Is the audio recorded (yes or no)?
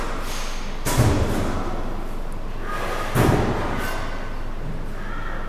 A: yes